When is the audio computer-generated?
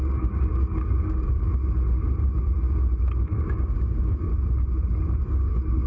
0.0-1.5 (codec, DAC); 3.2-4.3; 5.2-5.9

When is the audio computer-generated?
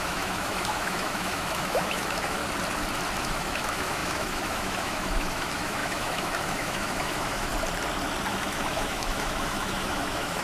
0.0-2.4 (autoencoder, DAC-VAE); 3.2-7.5; 8.3-10.4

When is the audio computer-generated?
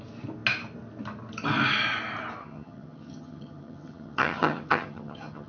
2.4-5.5 (vocoder, HiFi-GAN)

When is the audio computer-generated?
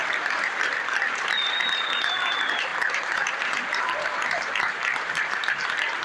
0.0-6.0 (vocoder, BigVGAN v2)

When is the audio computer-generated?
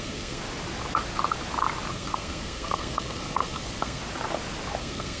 0.0-0.4 (codec, SNAC); 1.9-4.0; 4.8-5.2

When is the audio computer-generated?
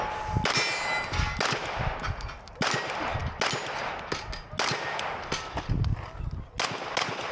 none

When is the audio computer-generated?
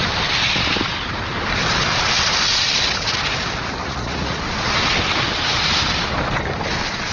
3.8-4.4 (vocoder, Vocos)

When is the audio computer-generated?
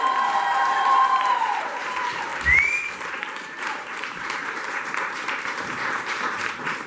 0.0-2.3 (vocoder, BigVGAN v2); 3.1-6.9